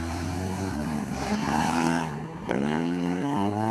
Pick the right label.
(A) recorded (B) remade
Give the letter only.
B